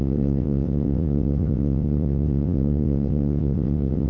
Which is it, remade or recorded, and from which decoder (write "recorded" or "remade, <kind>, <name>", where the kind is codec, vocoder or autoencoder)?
remade, vocoder, WaveNeXt